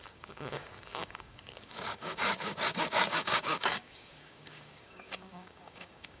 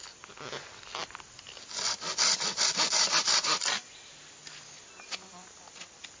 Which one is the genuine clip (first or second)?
second